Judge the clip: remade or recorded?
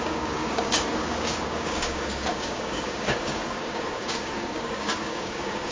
remade